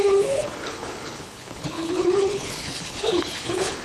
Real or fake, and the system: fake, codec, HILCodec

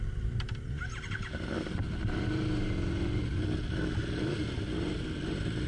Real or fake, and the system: real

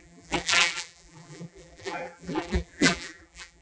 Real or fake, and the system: fake, vocoder, BigVGAN v2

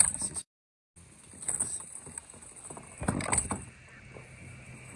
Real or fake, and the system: real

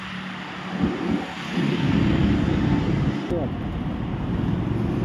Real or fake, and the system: real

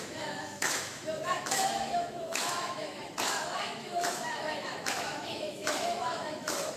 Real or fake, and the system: fake, autoencoder, DAC-VAE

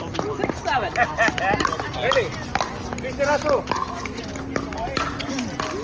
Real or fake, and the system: real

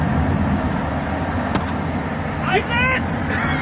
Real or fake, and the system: real